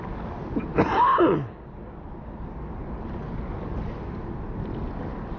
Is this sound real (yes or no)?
yes